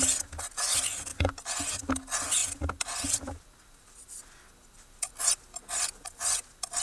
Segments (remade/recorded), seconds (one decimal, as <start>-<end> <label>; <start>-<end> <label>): 0.0-1.1 recorded; 1.1-1.7 remade; 1.7-6.8 recorded